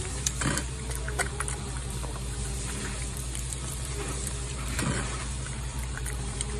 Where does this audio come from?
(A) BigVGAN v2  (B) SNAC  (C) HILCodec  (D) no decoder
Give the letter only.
A